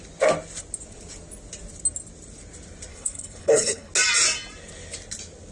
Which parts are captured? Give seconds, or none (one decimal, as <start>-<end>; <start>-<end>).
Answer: 0.0-2.9; 3.9-5.5